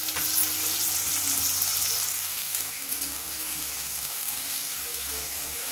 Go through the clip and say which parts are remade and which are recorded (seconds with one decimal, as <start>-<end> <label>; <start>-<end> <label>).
0.0-2.1 recorded; 2.1-5.7 remade